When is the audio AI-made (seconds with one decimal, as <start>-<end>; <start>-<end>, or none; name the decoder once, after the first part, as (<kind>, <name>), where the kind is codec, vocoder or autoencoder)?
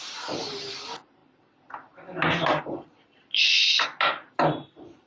none